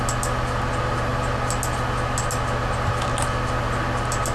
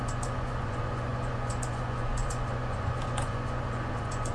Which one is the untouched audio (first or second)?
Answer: first